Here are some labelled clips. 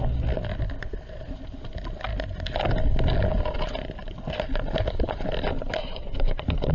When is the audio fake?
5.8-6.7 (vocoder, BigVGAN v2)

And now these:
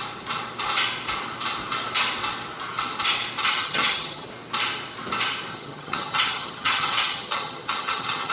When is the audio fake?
3.4-4.3 (vocoder, HiFi-GAN); 5.5-8.3